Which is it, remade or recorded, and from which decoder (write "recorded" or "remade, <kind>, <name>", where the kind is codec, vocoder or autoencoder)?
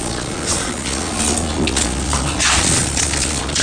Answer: remade, vocoder, Vocos